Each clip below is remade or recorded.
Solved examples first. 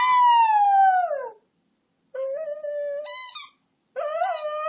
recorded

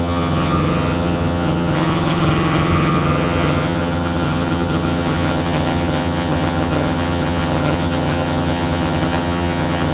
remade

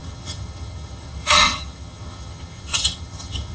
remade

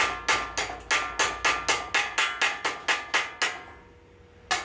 recorded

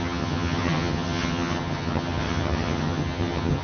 remade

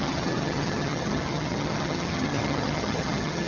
remade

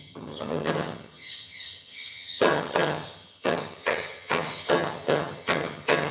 remade